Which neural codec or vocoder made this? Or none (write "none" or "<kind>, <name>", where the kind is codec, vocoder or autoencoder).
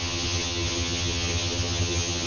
vocoder, HiFi-GAN